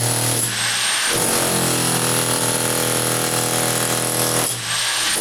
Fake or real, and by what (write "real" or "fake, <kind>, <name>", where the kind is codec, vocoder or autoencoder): real